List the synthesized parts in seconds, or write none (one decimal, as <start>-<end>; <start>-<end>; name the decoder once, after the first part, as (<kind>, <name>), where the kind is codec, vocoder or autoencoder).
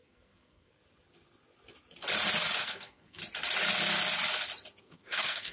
0.0-0.8 (codec, SNAC); 2.6-3.2; 4.8-5.5